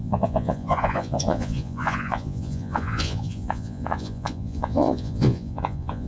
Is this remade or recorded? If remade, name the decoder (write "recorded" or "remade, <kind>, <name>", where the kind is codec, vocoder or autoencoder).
remade, vocoder, Vocos